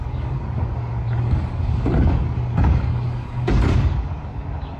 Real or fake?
fake